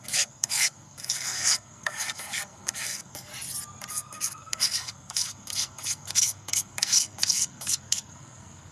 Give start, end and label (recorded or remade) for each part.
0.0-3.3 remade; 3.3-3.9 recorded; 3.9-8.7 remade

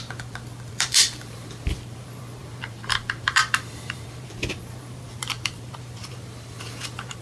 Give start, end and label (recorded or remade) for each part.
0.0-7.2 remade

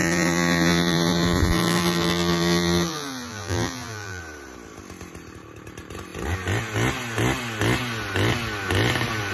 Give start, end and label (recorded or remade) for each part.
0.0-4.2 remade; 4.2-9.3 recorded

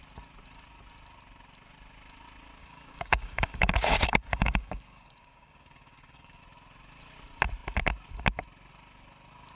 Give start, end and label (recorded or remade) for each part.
0.0-2.6 recorded; 2.6-6.4 remade; 6.4-9.6 recorded

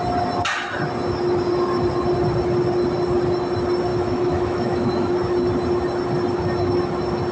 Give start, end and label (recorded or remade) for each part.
0.0-3.9 recorded; 3.9-5.1 remade; 5.1-7.3 recorded